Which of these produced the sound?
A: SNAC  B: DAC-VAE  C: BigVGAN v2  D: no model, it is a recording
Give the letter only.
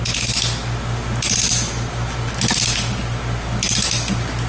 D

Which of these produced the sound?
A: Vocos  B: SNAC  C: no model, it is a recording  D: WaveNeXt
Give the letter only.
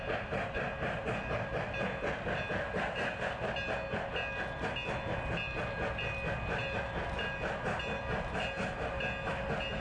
C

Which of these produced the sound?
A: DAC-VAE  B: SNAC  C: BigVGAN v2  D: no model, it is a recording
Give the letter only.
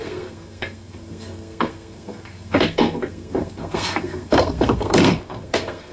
B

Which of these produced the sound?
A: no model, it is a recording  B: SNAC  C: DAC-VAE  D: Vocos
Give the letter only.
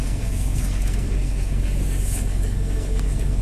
B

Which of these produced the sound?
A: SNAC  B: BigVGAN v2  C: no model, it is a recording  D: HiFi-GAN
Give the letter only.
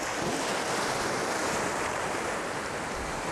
C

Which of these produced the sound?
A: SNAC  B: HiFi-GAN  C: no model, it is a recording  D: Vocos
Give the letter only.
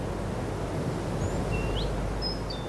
C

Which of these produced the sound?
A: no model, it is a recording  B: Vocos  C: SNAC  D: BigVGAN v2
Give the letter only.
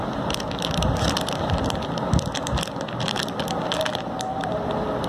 A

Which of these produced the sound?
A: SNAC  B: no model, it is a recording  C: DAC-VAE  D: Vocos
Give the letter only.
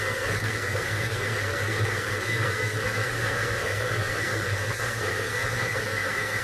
A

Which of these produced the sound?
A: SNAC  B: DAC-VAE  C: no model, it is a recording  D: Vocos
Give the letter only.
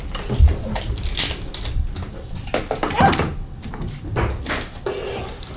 C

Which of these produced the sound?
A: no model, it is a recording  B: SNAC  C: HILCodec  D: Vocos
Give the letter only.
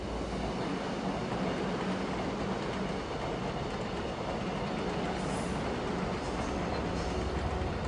A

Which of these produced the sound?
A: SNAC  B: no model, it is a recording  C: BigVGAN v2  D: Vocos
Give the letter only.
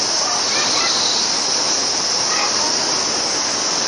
B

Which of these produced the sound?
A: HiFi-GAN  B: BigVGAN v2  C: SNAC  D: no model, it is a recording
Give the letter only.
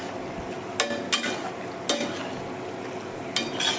D